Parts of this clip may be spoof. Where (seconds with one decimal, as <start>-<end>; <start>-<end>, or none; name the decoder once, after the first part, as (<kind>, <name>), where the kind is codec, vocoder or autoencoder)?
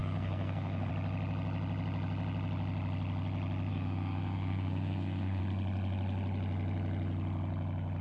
0.0-0.9 (codec, SNAC); 3.7-5.4